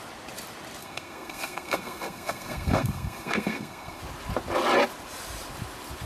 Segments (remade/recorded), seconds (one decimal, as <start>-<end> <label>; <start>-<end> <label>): 0.0-0.8 recorded; 0.8-4.0 remade; 4.0-6.1 recorded